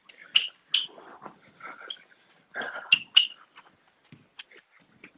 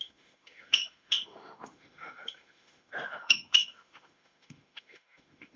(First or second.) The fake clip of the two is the second